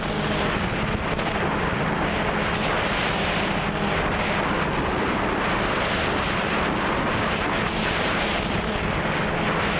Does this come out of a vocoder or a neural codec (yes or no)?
no